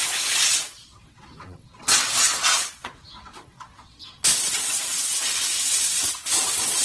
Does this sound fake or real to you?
fake